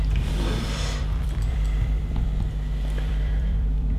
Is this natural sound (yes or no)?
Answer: no